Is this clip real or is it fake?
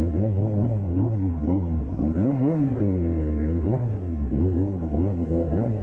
fake